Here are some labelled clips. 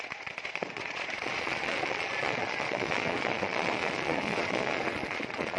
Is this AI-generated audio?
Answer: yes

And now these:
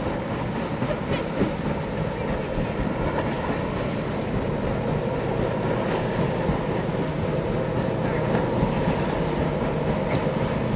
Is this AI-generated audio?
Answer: no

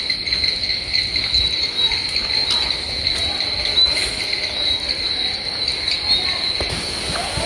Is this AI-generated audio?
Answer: no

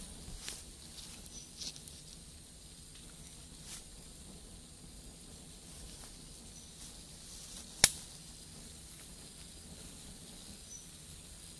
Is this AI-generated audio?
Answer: no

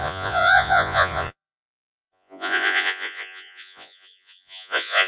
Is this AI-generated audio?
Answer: yes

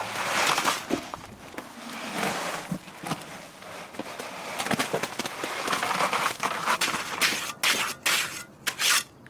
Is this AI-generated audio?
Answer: no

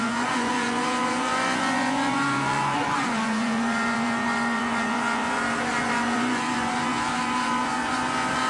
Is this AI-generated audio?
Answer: yes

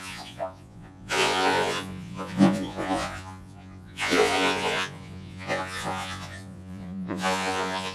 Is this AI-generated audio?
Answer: yes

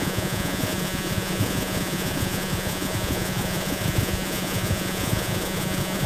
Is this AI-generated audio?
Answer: yes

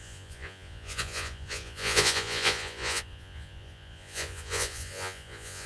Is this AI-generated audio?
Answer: yes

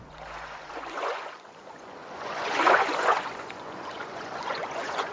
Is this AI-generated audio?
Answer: yes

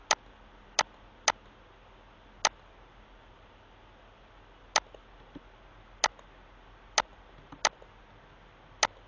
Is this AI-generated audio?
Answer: no